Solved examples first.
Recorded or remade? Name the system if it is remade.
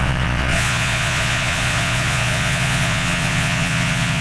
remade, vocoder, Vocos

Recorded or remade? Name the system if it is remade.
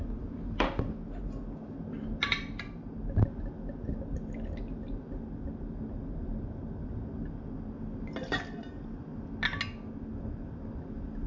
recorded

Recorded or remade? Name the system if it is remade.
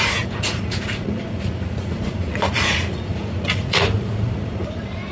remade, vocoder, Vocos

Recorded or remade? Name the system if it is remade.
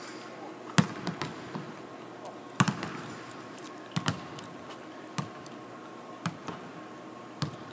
recorded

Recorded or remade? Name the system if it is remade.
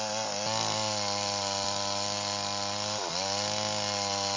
recorded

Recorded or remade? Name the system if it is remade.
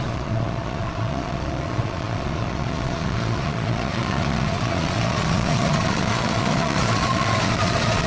remade, vocoder, Vocos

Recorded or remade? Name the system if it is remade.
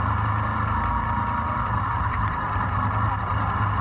recorded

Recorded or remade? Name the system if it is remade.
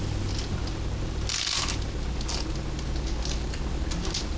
recorded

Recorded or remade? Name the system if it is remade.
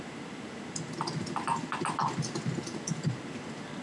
recorded